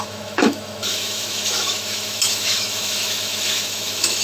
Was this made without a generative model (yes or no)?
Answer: no